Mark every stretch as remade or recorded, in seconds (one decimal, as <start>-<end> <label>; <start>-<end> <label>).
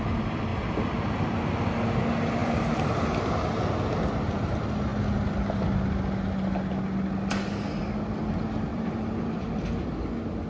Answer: 0.0-2.4 recorded; 2.4-2.9 remade; 2.9-8.7 recorded; 8.7-9.6 remade; 9.6-10.5 recorded